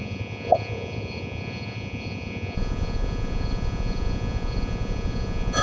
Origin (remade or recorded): remade